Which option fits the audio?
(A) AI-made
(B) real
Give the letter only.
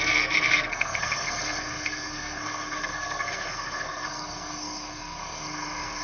A